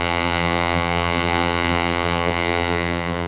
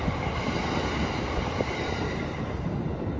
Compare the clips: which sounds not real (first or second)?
first